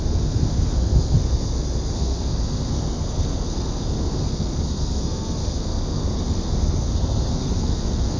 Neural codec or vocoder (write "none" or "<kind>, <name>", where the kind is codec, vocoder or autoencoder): codec, SNAC